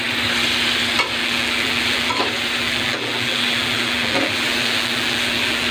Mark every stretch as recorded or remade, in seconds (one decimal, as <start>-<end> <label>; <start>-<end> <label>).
0.0-1.2 recorded; 1.2-2.1 remade; 2.1-2.6 recorded; 2.6-5.7 remade